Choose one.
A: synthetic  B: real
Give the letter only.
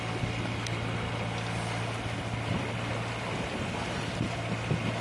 B